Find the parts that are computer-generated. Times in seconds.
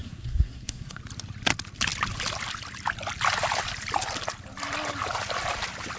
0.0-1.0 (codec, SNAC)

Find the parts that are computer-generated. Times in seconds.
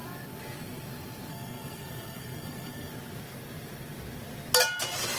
1.3-2.9 (codec, SNAC)